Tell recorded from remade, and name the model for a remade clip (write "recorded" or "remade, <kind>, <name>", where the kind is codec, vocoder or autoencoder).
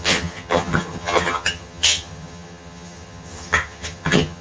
remade, vocoder, HiFi-GAN